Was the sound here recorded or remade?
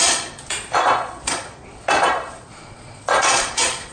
remade